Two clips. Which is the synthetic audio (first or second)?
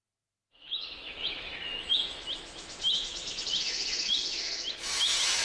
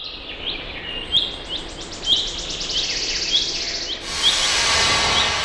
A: first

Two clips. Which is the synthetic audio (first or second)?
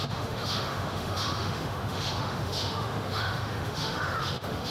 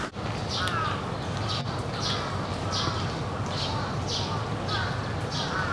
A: first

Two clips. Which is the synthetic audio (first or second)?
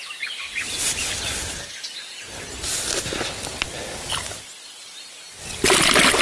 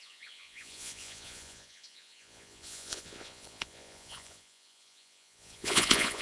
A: second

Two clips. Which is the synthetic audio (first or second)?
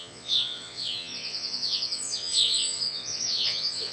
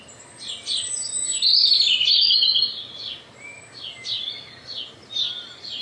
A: first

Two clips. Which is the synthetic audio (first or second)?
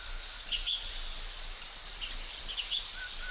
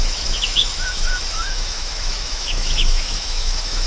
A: second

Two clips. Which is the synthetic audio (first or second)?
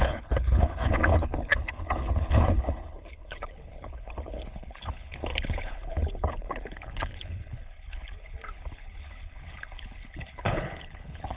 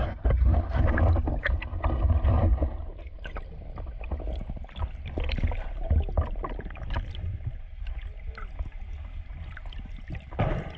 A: first